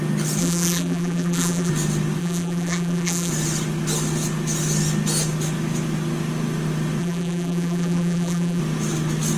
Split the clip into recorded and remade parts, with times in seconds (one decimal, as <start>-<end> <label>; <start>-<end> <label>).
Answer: 0.0-0.4 recorded; 0.4-1.7 remade; 1.7-2.2 recorded; 2.2-3.3 remade; 3.3-7.0 recorded; 7.0-8.6 remade; 8.6-9.4 recorded